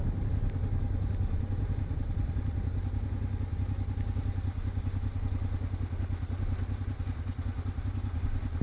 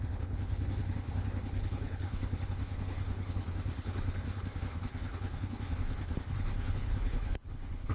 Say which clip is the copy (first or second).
second